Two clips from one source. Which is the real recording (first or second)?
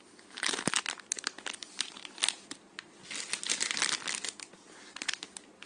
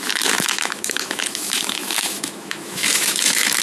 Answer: first